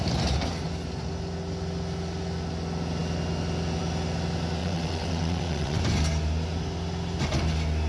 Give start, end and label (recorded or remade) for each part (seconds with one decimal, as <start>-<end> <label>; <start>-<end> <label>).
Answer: 0.0-4.6 recorded; 4.6-5.8 remade; 5.8-7.9 recorded